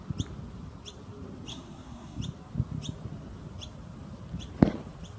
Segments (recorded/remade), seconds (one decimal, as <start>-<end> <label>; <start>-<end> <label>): 0.0-1.5 recorded; 1.5-2.2 remade; 2.2-5.2 recorded